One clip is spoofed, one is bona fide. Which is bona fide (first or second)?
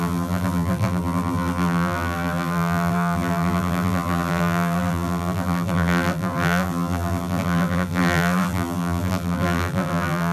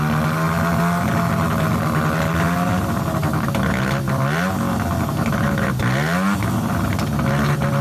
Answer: second